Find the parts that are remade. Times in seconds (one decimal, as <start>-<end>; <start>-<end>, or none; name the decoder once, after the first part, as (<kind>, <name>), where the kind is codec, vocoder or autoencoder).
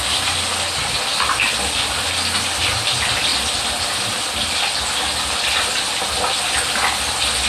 none